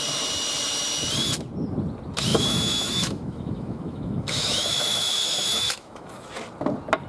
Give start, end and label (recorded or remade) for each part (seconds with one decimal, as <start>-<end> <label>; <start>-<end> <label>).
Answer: 0.0-2.3 recorded; 2.3-6.3 remade; 6.3-7.1 recorded